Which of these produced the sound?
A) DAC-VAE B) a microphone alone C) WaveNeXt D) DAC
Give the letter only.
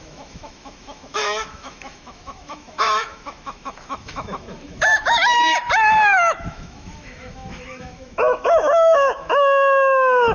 A